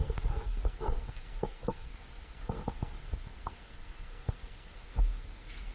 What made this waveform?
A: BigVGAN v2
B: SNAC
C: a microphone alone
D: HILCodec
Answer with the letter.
B